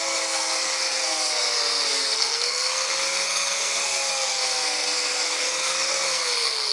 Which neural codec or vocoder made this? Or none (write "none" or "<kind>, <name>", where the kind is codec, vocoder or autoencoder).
codec, SNAC